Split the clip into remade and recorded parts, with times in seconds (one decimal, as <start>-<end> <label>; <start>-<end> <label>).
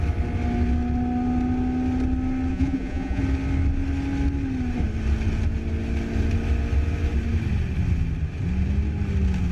0.0-2.5 recorded; 2.5-3.2 remade; 3.2-9.5 recorded